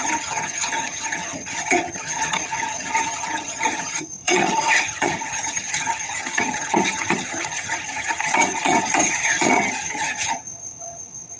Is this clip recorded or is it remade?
remade